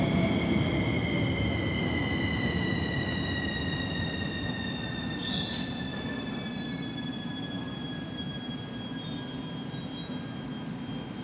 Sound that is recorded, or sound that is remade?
recorded